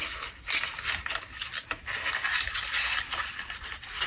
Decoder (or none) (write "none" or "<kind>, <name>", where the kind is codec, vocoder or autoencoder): none